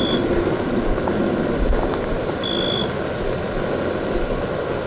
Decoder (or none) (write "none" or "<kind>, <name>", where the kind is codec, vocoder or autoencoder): none